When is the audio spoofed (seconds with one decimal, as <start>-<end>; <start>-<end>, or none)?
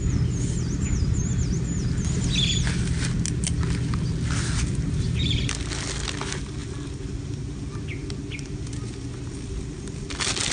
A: none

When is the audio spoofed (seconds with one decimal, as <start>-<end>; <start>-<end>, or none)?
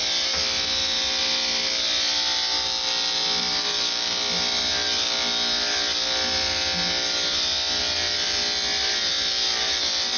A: none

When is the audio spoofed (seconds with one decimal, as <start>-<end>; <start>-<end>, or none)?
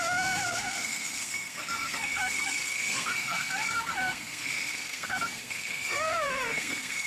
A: 0.0-7.1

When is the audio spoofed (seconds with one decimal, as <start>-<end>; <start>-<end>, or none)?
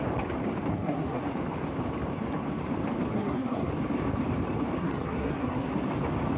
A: 0.7-1.2; 3.1-3.7; 4.8-5.7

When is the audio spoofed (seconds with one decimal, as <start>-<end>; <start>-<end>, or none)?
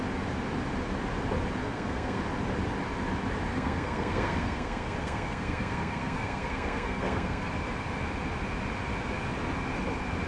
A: 1.6-2.2; 3.5-7.5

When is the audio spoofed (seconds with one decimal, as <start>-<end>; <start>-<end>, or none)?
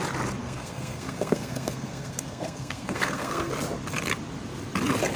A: 0.4-3.5